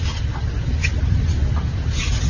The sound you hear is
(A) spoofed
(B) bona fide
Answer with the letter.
B